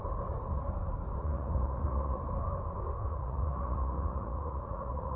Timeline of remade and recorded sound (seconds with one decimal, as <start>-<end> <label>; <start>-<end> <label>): 0.0-1.2 recorded; 1.2-2.2 remade; 2.2-3.1 recorded; 3.1-5.2 remade